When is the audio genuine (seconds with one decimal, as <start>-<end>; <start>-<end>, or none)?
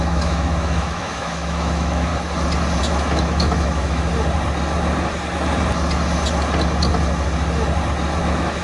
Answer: 2.1-2.8; 4.1-8.2